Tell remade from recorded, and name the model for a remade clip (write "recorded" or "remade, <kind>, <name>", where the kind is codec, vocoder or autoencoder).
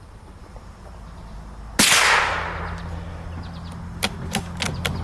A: recorded